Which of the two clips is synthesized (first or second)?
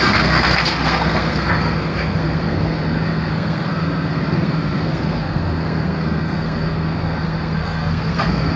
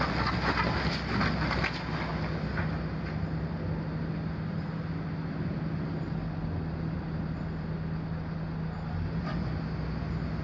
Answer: first